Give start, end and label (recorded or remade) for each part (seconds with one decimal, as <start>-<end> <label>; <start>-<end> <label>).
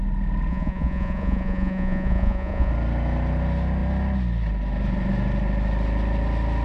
0.0-0.5 recorded; 0.5-2.7 remade; 2.7-6.6 recorded